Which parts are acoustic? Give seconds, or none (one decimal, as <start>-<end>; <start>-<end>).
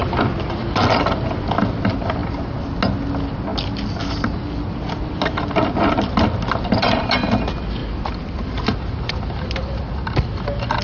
0.0-7.8; 9.1-10.8